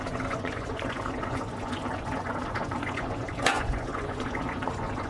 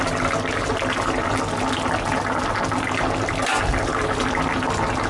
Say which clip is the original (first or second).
second